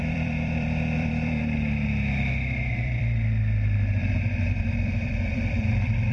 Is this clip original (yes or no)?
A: no